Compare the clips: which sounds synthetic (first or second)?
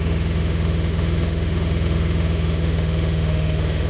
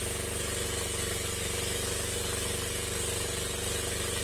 first